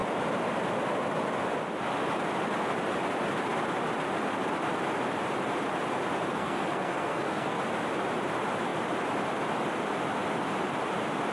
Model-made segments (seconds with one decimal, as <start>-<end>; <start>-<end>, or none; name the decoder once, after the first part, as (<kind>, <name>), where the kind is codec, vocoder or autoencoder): 6.3-7.6 (codec, SNAC)